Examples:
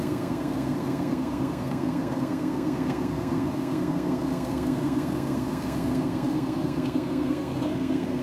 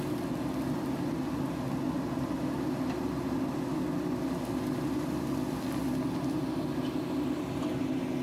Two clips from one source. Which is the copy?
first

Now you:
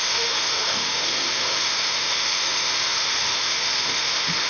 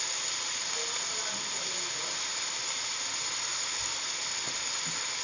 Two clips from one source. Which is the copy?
first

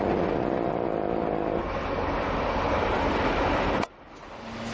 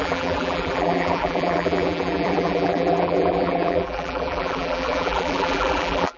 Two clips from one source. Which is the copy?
second